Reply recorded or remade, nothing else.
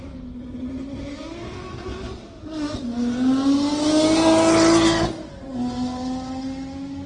recorded